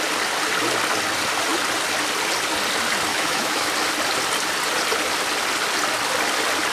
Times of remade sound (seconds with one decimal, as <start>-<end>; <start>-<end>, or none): 3.1-3.7

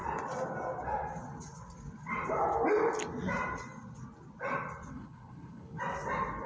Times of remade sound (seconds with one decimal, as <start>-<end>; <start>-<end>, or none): 4.9-5.8

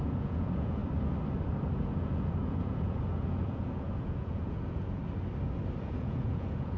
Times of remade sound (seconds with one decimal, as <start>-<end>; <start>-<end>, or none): 0.0-0.8; 1.7-5.0; 5.8-6.8

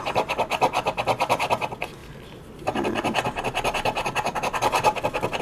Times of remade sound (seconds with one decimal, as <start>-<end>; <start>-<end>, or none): none

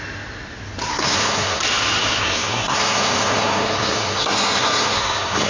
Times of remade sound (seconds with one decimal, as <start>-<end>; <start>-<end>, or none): 0.9-1.6; 2.2-5.5

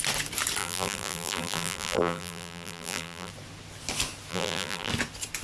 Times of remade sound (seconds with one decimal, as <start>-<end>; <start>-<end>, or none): 0.6-3.3; 4.3-4.9

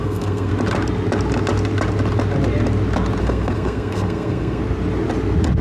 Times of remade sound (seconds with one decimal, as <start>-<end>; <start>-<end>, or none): 0.0-0.5; 3.2-4.6

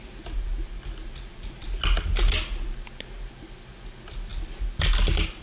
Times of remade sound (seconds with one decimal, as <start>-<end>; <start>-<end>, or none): none